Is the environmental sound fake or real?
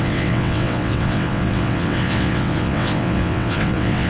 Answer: fake